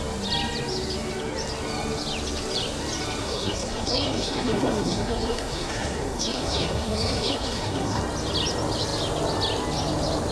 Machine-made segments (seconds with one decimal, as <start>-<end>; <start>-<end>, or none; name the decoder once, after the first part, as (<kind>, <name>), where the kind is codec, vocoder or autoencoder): 3.2-8.0 (codec, SNAC)